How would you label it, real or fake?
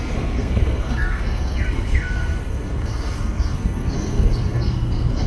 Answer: fake